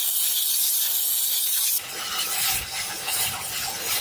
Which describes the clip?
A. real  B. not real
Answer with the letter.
A